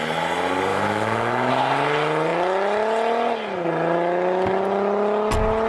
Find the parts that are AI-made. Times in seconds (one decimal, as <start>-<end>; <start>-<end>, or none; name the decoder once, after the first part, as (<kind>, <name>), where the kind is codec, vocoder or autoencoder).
0.7-1.5 (autoencoder, DAC-VAE)